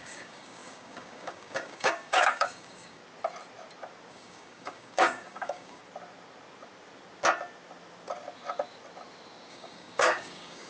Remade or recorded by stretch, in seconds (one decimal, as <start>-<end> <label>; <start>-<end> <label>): 0.0-3.0 remade; 3.0-4.1 recorded; 4.1-5.8 remade; 5.8-9.5 recorded; 9.5-10.7 remade